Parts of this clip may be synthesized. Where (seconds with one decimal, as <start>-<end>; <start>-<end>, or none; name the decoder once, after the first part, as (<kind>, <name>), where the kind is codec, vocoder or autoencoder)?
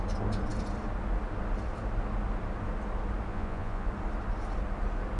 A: 3.3-3.9 (vocoder, Vocos)